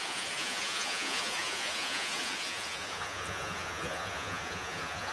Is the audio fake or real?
fake